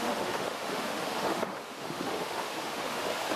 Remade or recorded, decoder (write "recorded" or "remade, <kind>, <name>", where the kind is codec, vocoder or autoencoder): remade, autoencoder, DAC-VAE